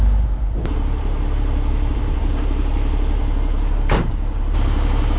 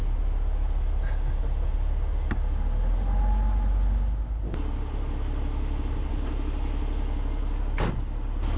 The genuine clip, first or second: second